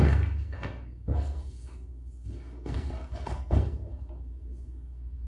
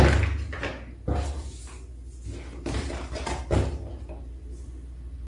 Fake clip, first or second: first